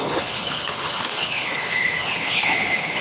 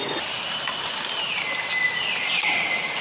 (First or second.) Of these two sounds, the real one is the second